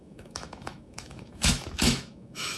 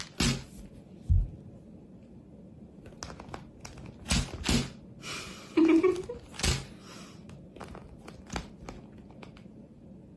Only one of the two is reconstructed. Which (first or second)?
first